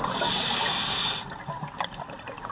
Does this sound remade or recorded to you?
recorded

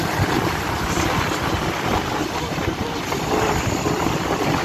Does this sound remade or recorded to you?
remade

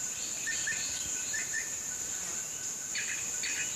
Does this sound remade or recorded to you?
remade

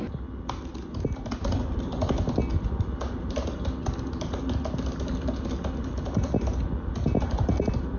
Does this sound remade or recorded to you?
recorded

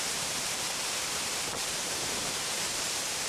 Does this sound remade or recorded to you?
remade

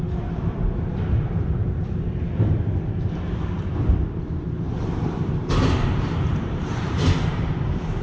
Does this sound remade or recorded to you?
remade